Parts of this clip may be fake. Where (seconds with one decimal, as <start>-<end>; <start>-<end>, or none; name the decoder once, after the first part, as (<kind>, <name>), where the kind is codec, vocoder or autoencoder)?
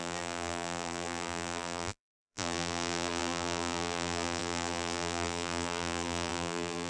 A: 0.0-6.9 (vocoder, BigVGAN v2)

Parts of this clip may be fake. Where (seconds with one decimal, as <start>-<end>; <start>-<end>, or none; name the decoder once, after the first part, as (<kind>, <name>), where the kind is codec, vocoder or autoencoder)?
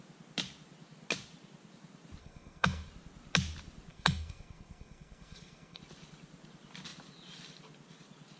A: 2.2-2.9 (codec, SNAC); 3.9-5.8